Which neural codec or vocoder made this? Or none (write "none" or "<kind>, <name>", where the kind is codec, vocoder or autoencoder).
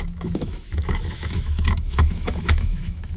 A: autoencoder, DAC-VAE